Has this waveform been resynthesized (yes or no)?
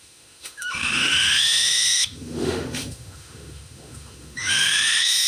yes